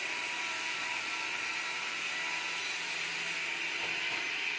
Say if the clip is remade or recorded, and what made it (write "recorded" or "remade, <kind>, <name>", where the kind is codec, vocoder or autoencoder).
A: recorded